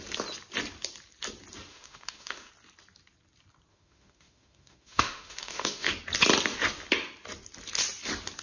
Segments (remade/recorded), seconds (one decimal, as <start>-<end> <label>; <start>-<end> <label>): 0.0-1.7 recorded; 1.7-2.5 remade; 2.5-3.7 recorded; 3.7-5.9 remade; 5.9-8.4 recorded